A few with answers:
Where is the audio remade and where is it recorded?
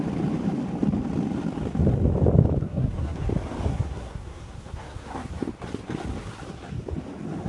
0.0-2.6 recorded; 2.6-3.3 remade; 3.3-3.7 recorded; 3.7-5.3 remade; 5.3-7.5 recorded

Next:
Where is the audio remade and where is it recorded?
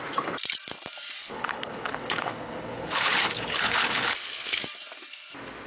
0.0-1.2 recorded; 1.2-4.6 remade; 4.6-5.7 recorded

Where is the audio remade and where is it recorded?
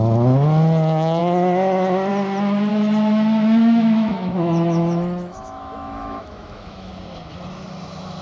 0.0-2.7 recorded; 2.7-6.9 remade; 6.9-8.2 recorded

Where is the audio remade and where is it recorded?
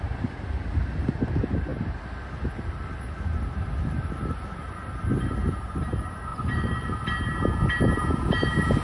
0.0-6.3 recorded; 6.3-6.9 remade; 6.9-8.8 recorded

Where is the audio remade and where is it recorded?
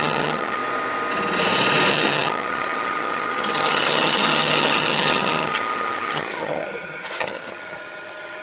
0.0-0.6 remade; 0.6-1.9 recorded; 1.9-8.4 remade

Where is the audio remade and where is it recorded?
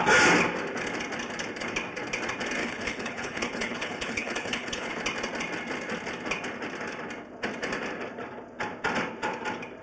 0.0-2.6 recorded; 2.6-4.9 remade; 4.9-9.8 recorded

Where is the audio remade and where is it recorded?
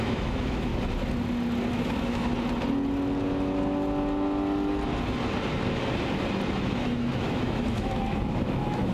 0.0-0.7 remade; 0.7-1.7 recorded; 1.7-2.3 remade; 2.3-6.5 recorded; 6.5-8.9 remade